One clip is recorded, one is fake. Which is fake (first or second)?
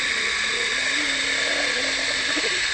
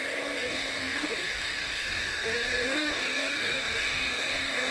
second